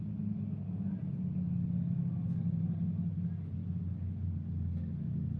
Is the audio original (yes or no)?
yes